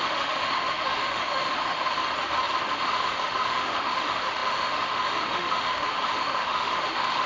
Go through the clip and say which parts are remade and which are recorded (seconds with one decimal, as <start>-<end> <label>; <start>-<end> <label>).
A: 0.0-2.0 remade; 2.0-2.7 recorded; 2.7-7.3 remade